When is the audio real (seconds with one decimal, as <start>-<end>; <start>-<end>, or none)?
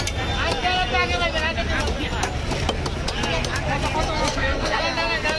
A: 0.0-4.3; 4.8-5.4